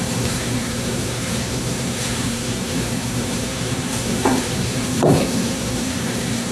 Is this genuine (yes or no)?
no